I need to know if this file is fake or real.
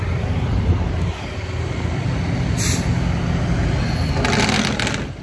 real